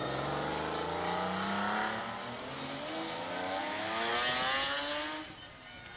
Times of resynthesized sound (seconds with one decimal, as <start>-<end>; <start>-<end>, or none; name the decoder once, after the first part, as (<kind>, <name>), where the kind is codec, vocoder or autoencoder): 3.6-4.1 (autoencoder, DAC-VAE)